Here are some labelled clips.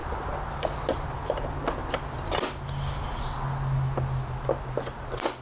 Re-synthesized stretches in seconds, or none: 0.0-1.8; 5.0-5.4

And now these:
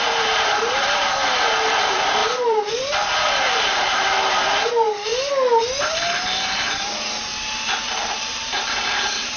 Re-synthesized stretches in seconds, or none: 0.0-5.1; 5.8-9.4

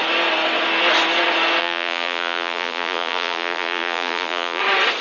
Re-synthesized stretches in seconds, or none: 1.6-4.6

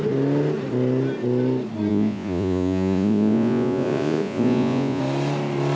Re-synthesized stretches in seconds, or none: 1.9-5.0

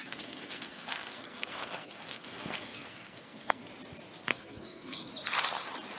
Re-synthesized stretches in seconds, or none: 0.0-3.6; 4.3-5.1

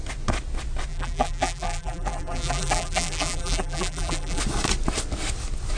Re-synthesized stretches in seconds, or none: 0.9-4.4